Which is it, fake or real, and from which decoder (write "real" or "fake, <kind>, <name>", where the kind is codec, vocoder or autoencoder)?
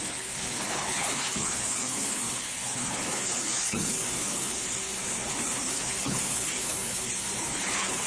fake, codec, HILCodec